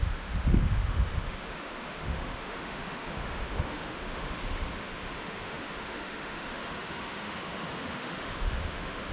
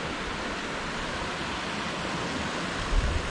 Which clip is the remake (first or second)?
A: first